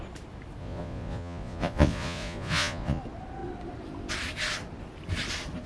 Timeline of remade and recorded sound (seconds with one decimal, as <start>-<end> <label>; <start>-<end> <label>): 0.0-0.6 recorded; 0.6-3.0 remade; 3.0-5.7 recorded